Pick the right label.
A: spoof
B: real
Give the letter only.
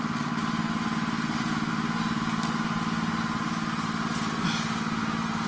B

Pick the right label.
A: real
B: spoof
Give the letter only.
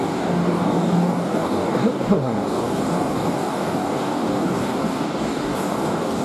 B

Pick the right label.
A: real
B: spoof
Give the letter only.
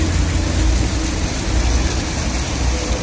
A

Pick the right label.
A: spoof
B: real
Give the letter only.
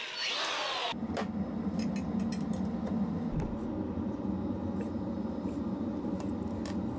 B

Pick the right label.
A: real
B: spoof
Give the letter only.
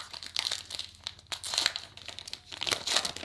A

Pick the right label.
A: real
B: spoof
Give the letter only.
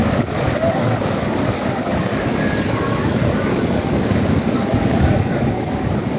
B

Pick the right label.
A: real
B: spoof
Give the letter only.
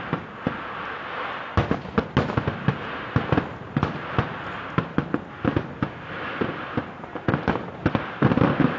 A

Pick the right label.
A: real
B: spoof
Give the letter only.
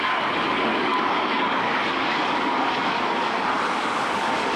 B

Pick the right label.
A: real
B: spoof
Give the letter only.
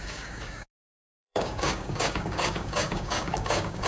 B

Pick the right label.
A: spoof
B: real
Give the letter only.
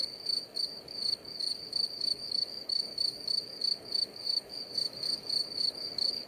A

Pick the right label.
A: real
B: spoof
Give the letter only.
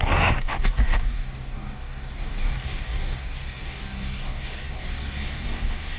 B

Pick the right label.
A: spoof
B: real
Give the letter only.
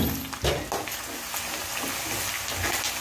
B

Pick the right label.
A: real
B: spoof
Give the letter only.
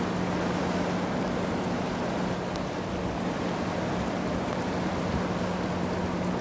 A